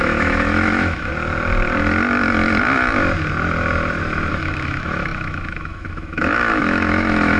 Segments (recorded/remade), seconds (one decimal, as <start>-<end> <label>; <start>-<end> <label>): 0.0-1.1 remade; 1.1-4.3 recorded; 4.3-7.4 remade